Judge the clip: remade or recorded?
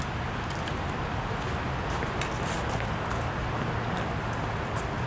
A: recorded